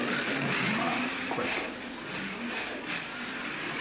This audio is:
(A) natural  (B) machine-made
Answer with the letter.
A